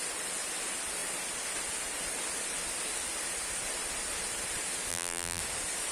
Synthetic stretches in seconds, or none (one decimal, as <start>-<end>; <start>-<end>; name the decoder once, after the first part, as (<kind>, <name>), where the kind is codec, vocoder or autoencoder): 4.9-5.4 (vocoder, BigVGAN v2)